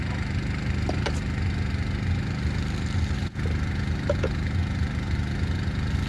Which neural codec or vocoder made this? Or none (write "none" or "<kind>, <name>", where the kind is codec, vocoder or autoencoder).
none